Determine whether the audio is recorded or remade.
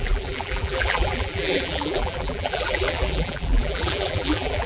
remade